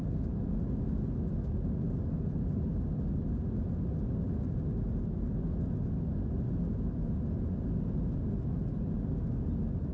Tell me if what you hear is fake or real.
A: real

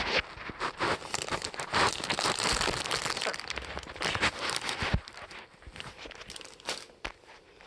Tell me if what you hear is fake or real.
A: real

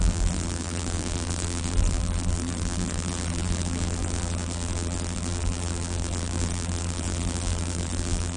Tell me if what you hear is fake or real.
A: fake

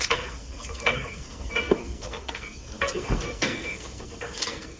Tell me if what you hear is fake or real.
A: fake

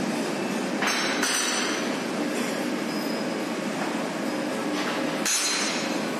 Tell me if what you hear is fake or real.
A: real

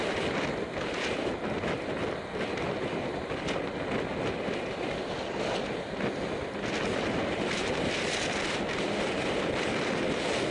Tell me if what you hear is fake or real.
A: real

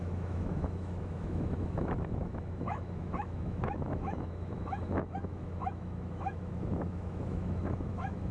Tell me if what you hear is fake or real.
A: fake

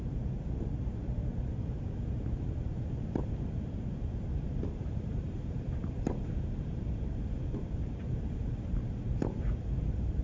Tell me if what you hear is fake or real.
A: fake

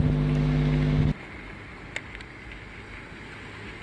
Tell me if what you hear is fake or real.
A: real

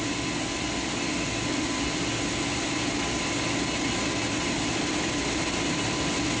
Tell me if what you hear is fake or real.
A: real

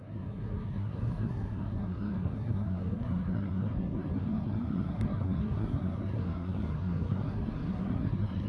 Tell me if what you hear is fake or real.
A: fake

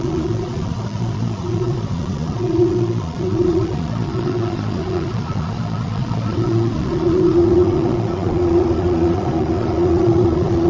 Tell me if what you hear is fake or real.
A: fake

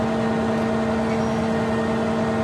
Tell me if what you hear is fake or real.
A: real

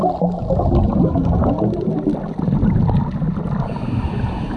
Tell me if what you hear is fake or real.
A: real